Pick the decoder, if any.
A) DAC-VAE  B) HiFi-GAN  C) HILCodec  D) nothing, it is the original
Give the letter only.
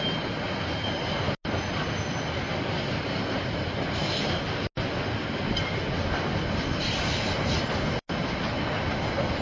D